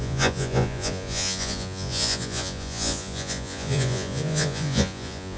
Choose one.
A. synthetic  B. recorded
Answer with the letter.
A